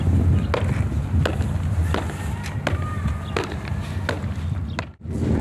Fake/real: real